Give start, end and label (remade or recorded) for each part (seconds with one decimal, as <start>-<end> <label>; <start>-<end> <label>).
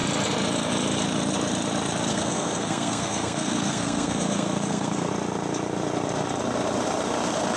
0.0-2.1 recorded; 2.1-5.1 remade; 5.1-7.6 recorded